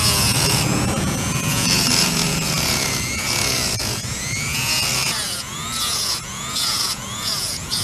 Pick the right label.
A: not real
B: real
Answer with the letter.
A